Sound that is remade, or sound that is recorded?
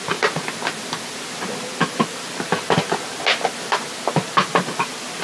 recorded